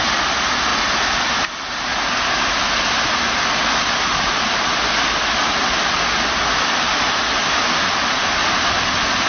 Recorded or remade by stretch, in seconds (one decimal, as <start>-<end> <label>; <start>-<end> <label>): 0.0-9.3 recorded